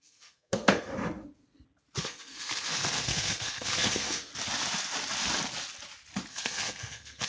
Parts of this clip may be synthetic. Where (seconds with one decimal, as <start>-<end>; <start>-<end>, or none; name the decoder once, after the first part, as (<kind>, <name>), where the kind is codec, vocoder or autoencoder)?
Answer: 0.0-0.9 (codec, SNAC); 2.0-4.3; 6.3-7.3